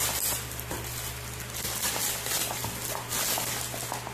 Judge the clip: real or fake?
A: real